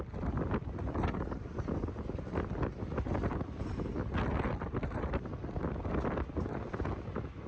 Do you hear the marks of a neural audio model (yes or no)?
no